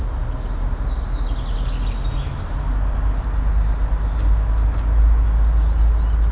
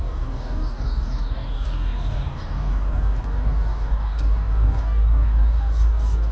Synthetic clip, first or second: second